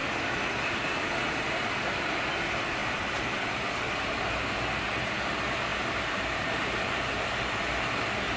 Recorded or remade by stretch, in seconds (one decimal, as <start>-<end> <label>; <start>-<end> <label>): 0.0-2.8 recorded; 2.8-3.7 remade; 3.7-5.7 recorded; 5.7-7.1 remade; 7.1-8.4 recorded